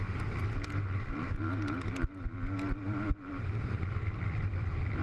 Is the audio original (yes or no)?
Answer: yes